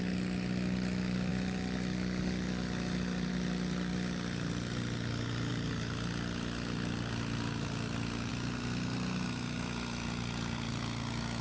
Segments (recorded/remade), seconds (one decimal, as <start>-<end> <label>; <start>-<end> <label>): 0.0-11.4 recorded